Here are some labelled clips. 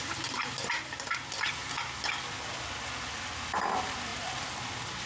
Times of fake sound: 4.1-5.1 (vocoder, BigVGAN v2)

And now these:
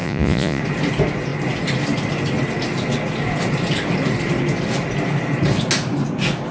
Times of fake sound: 0.0-0.6 (vocoder, Vocos)